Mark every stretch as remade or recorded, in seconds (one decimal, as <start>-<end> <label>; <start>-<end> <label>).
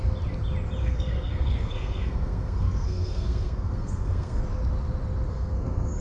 0.0-0.8 recorded; 0.8-4.4 remade; 4.4-5.3 recorded; 5.3-6.0 remade